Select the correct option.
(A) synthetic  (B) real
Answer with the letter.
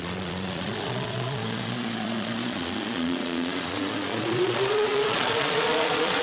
A